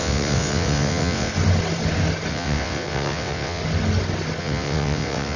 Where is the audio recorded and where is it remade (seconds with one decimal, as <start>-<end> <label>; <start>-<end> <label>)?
0.0-1.3 remade; 1.3-2.3 recorded; 2.3-3.6 remade; 3.6-4.4 recorded; 4.4-5.4 remade